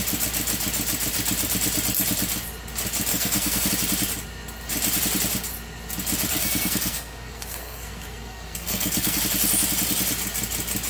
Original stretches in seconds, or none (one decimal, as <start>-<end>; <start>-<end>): 0.0-3.1; 3.7-6.3; 9.2-10.9